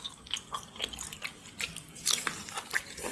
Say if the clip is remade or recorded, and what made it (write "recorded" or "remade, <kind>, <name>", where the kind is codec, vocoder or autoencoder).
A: recorded